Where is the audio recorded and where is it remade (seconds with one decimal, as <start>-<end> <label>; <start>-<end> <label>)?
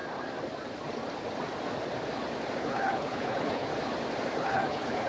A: 0.0-2.6 recorded; 2.6-3.7 remade; 3.7-4.4 recorded; 4.4-5.1 remade